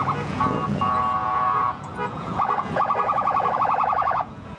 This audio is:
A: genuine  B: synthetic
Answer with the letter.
B